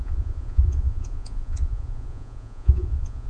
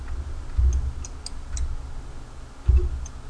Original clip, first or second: second